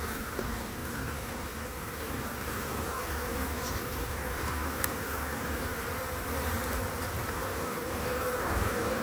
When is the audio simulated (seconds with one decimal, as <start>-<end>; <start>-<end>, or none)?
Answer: 0.0-5.8; 7.3-9.0